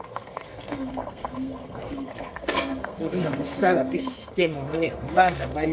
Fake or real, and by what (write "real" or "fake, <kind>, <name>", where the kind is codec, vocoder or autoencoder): fake, codec, SNAC